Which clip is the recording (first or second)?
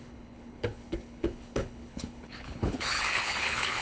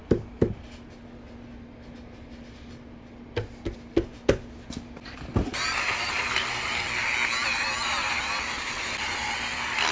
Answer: second